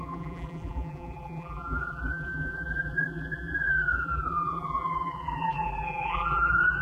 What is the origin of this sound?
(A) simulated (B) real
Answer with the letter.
A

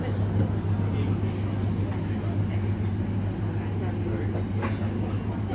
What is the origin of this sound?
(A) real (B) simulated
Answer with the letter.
A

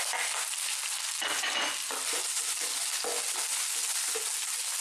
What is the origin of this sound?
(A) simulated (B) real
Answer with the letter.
B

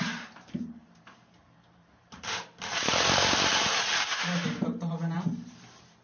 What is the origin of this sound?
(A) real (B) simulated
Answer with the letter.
B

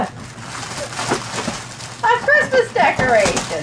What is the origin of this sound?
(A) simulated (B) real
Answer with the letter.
B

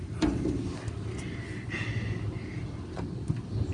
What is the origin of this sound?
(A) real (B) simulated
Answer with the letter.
A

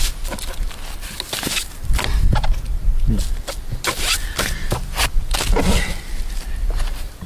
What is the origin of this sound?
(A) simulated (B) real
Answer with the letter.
B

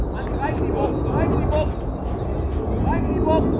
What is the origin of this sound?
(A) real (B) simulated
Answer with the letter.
A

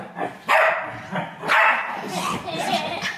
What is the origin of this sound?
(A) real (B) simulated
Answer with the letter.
A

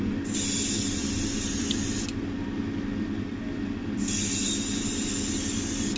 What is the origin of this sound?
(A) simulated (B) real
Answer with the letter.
B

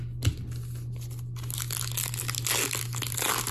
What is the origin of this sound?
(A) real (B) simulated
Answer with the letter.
A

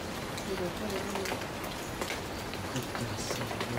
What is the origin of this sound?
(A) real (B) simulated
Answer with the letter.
A